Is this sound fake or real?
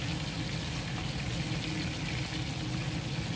real